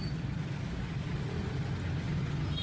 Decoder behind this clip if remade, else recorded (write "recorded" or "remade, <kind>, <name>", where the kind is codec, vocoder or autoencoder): recorded